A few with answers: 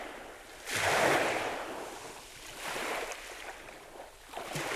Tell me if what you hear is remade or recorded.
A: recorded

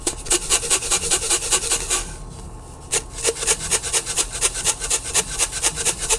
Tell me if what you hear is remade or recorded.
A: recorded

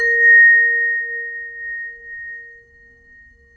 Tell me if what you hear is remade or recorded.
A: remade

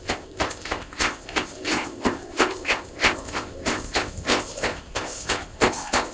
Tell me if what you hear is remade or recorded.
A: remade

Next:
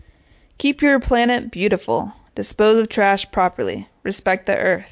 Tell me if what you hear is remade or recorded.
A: recorded